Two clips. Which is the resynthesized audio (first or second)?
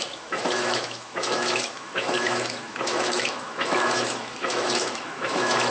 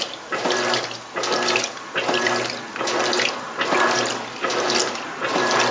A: first